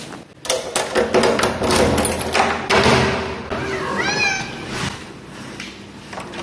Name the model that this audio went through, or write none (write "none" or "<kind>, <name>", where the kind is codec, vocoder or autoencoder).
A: none